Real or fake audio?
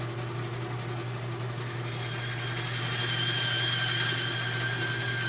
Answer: real